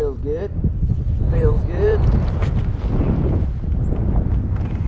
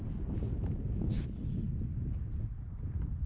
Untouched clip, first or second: second